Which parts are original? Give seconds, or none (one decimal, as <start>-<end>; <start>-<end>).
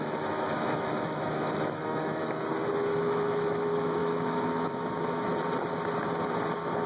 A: 2.2-3.0; 5.3-6.5